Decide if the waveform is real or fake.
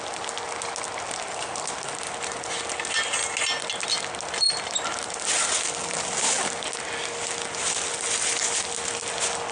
real